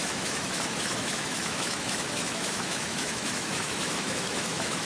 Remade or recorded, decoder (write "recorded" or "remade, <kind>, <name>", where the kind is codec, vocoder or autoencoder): remade, autoencoder, DAC-VAE